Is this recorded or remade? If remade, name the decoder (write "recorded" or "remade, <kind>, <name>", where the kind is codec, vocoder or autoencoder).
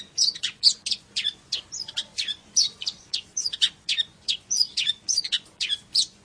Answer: remade, vocoder, Vocos